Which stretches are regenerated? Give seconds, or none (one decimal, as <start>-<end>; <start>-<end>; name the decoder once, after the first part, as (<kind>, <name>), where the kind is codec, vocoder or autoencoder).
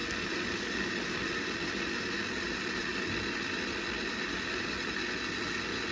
none